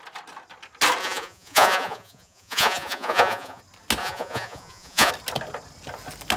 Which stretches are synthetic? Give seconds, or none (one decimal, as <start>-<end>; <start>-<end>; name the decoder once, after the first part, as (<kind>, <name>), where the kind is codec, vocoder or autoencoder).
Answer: 1.0-3.6 (vocoder, Vocos); 4.0-5.1

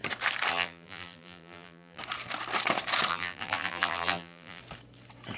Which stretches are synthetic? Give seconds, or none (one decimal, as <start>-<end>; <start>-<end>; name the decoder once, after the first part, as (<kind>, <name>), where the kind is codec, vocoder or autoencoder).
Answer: 0.5-2.0 (vocoder, BigVGAN v2); 3.1-4.6

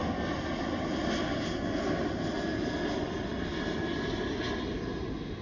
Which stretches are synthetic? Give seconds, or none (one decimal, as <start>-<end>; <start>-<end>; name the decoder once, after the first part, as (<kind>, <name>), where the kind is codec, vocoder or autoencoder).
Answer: none

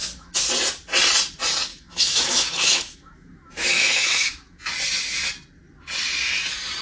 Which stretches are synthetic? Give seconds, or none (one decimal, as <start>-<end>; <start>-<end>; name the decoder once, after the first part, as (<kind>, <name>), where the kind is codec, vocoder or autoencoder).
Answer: 0.0-0.5 (autoencoder, DAC-VAE); 1.7-4.7

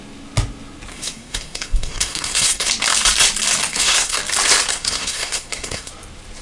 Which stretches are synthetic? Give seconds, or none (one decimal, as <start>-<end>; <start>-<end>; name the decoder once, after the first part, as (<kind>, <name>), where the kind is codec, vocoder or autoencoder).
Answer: 0.9-2.7 (codec, SNAC); 3.7-4.2; 4.7-5.9

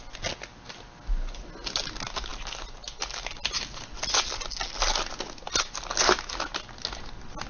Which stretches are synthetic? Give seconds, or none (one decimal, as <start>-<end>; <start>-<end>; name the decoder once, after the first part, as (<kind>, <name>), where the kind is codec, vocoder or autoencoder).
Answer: none

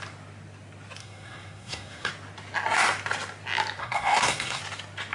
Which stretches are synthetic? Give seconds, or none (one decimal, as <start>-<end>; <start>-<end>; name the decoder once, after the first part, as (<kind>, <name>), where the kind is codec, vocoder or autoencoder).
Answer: 1.0-2.1 (codec, SNAC); 3.8-4.6